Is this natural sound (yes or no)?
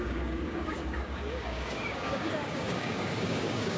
no